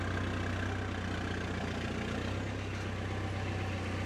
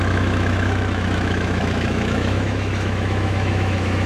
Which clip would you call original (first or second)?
first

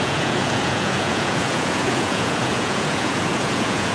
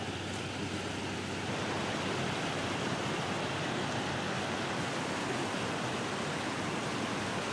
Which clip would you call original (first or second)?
second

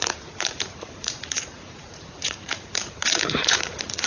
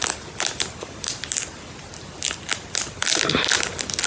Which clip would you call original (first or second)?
second